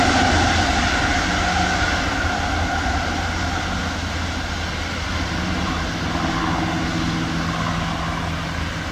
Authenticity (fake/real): real